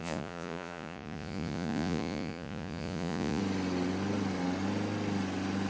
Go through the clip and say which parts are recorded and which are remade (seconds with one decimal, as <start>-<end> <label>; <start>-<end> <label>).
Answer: 0.0-3.4 remade; 3.4-5.7 recorded